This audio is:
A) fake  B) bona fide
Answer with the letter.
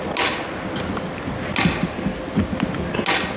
B